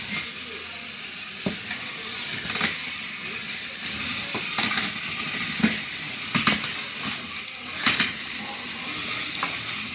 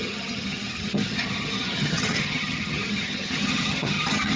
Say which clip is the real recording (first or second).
first